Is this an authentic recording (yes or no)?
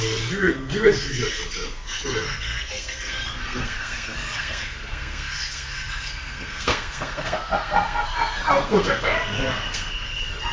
no